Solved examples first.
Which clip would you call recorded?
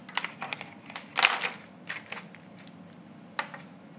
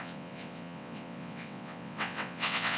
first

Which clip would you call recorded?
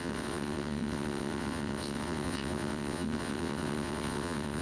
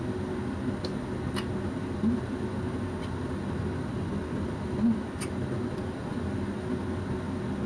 second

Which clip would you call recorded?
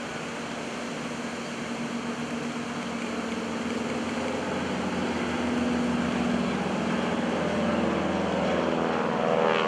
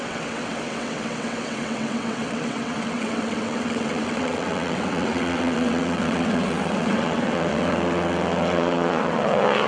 first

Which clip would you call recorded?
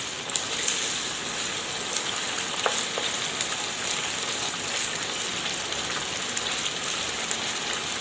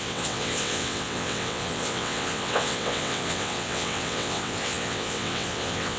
first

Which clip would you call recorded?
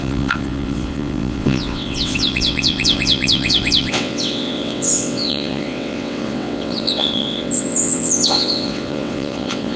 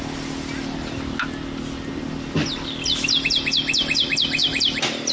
second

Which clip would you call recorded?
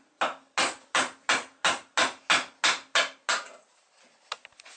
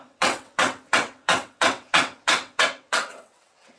first